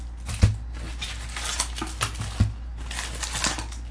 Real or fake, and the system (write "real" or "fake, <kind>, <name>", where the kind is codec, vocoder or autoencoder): real